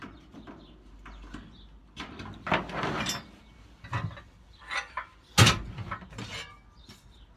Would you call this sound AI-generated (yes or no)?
no